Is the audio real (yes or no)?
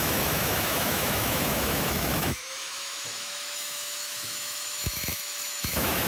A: no